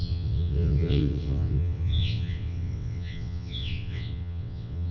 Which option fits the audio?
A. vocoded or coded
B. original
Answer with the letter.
A